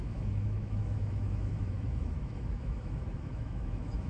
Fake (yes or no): yes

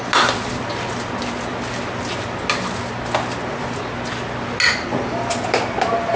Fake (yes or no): no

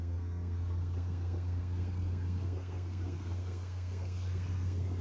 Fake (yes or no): yes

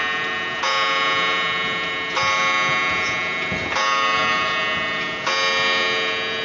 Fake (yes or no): no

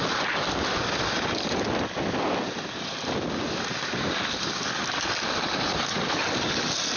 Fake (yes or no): yes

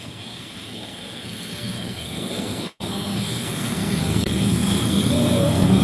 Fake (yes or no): yes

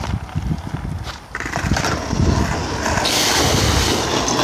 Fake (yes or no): no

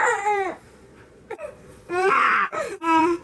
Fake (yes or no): yes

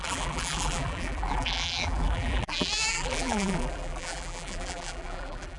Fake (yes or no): yes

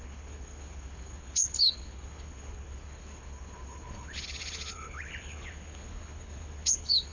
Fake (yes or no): yes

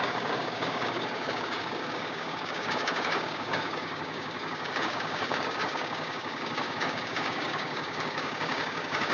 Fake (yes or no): yes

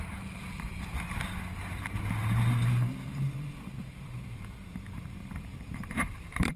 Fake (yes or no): yes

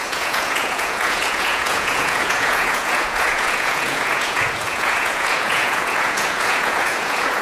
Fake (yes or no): yes